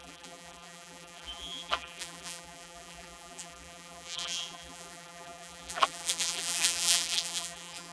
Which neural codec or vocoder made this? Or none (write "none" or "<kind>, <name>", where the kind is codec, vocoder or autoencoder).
vocoder, BigVGAN v2